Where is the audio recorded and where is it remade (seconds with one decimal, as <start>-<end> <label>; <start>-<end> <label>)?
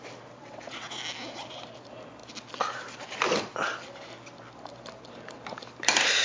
0.0-0.4 recorded; 0.4-1.0 remade; 1.0-6.2 recorded